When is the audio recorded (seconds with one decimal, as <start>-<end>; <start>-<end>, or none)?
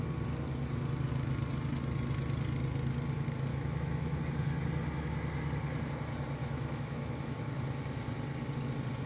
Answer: 0.0-3.5; 4.2-6.4; 7.4-9.1